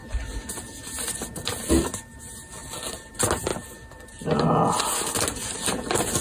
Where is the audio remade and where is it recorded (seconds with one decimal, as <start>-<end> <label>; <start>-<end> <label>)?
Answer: 0.0-6.2 recorded